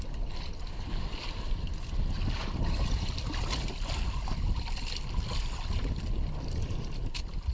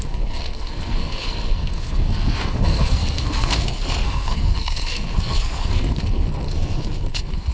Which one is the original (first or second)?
first